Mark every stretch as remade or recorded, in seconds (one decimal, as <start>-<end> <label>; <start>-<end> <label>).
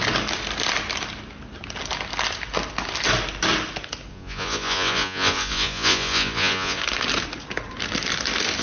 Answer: 0.0-4.1 recorded; 4.1-6.8 remade; 6.8-8.6 recorded